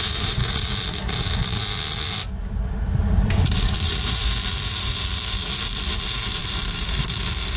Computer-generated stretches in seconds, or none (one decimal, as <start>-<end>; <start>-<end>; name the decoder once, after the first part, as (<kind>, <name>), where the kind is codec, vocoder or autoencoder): 0.0-0.4 (vocoder, BigVGAN v2); 3.0-7.6